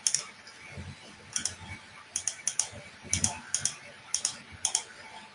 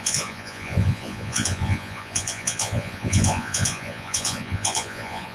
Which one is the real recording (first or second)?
first